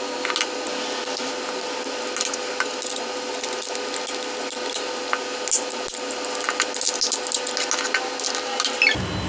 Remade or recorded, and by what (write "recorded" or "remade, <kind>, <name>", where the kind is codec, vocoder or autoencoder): recorded